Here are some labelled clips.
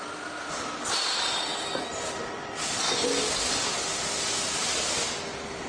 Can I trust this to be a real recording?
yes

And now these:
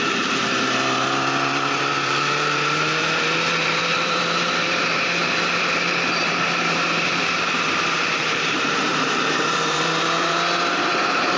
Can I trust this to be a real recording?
no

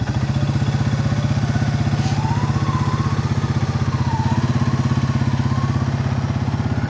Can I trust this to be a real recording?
yes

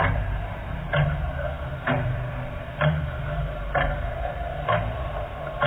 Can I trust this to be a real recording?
no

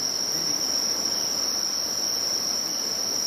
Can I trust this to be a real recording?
yes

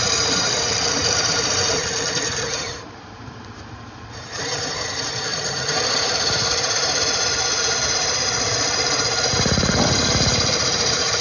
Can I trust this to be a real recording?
no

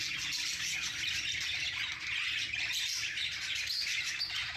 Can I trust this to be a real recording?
yes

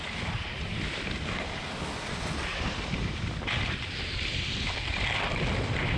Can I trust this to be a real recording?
no